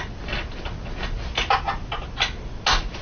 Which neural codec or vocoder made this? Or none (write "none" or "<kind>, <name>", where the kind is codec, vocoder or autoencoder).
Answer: none